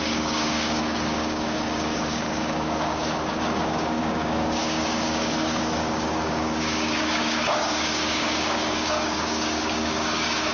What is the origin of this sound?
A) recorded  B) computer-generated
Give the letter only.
B